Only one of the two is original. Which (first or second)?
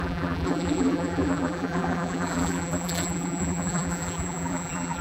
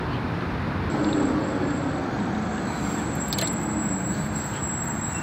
second